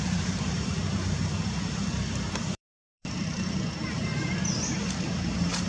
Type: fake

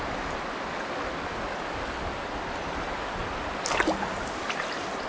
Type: real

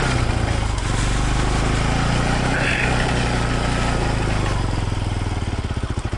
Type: real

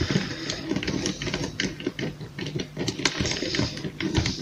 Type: fake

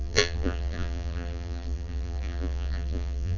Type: fake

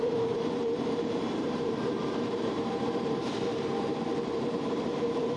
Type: fake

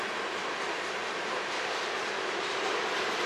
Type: fake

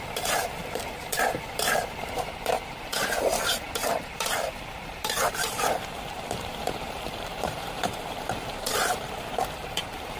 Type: fake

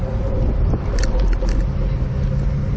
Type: real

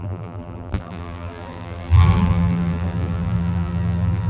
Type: fake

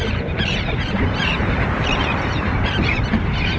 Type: fake